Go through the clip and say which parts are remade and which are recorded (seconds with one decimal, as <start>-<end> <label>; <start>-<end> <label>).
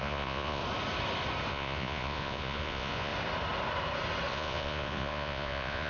0.0-0.6 remade; 0.6-1.5 recorded; 1.5-3.1 remade; 3.1-4.3 recorded; 4.3-5.9 remade